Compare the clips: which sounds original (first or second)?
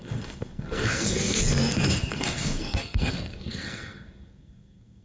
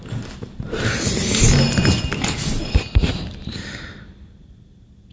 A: second